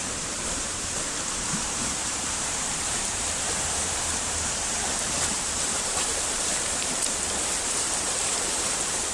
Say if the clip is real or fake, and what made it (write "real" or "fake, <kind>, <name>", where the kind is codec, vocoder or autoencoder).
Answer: fake, vocoder, BigVGAN v2